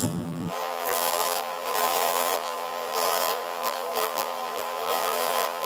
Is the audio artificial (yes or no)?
yes